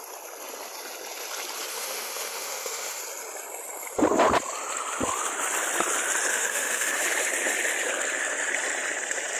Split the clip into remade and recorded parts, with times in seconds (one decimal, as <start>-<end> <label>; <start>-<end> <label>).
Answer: 0.0-1.7 recorded; 1.7-3.0 remade; 3.0-6.3 recorded; 6.3-6.9 remade; 6.9-9.4 recorded